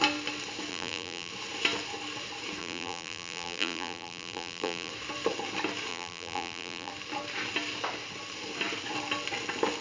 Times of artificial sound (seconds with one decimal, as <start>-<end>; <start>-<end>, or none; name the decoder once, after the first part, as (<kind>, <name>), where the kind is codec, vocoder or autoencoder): 0.7-1.3 (vocoder, BigVGAN v2); 2.6-4.9; 5.9-6.9